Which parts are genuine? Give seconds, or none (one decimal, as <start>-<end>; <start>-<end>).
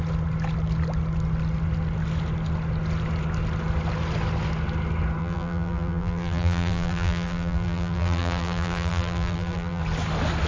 0.0-5.2; 9.8-10.5